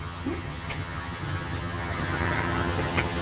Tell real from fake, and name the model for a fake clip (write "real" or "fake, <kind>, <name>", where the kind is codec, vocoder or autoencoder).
fake, vocoder, HiFi-GAN